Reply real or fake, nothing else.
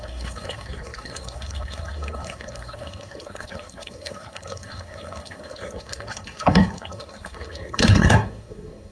fake